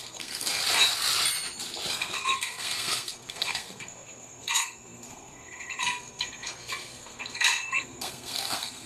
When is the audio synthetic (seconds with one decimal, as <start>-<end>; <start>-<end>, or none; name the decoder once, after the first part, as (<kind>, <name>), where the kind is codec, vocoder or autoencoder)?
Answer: 0.0-0.6 (codec, SNAC); 1.9-8.9